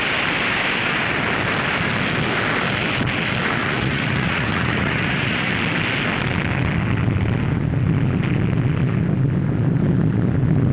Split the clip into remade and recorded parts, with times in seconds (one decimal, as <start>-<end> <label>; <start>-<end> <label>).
0.0-3.6 recorded; 3.6-5.5 remade; 5.5-10.7 recorded